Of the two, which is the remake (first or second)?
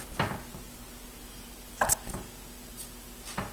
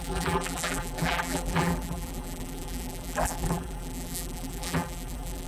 second